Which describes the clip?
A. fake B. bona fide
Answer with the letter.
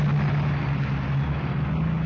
B